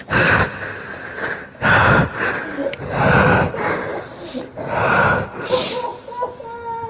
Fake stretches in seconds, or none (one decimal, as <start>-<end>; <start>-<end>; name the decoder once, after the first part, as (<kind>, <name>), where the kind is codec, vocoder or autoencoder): 3.9-4.6 (vocoder, BigVGAN v2)